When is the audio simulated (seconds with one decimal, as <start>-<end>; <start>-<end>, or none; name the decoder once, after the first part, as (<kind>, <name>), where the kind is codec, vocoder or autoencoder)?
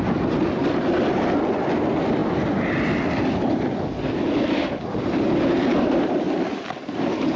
none